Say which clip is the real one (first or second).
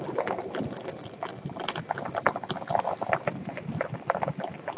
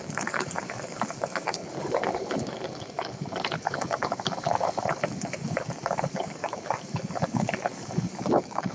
first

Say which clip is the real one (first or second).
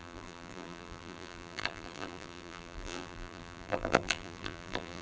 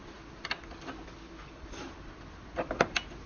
second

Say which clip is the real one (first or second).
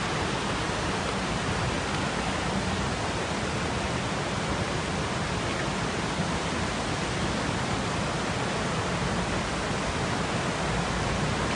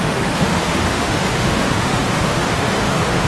first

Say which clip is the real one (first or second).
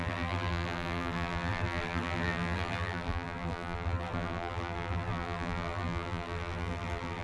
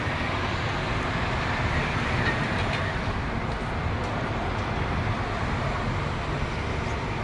second